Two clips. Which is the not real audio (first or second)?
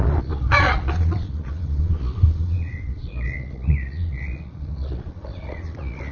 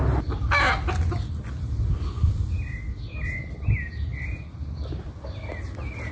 first